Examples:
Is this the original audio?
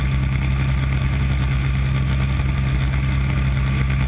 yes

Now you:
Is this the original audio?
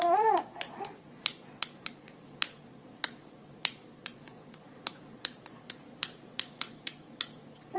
no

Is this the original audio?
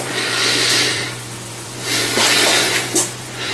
no